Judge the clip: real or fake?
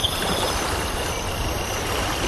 real